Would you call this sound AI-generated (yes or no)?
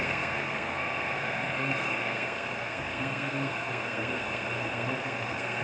yes